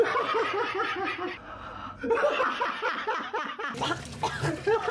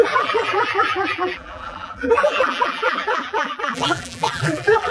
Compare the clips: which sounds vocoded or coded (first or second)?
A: second